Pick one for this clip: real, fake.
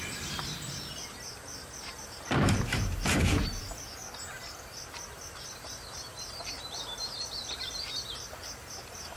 fake